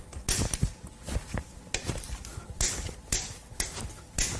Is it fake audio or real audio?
real